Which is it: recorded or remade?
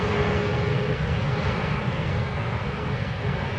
remade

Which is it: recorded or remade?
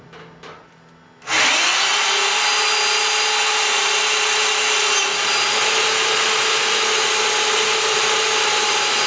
recorded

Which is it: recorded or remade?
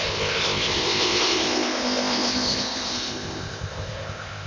remade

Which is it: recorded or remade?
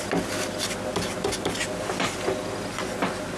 recorded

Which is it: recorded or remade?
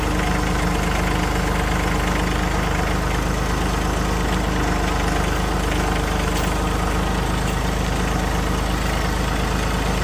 recorded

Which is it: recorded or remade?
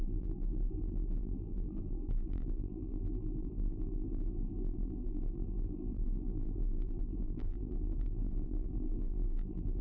remade